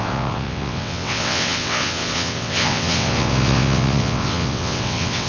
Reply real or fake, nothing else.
fake